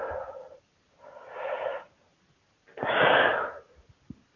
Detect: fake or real real